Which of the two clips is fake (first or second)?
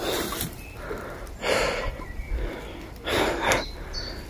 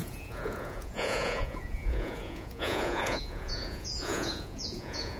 second